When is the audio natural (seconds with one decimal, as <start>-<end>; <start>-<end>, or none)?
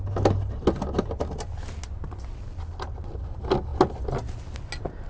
0.0-5.1